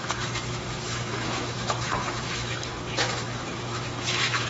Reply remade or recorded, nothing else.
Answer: remade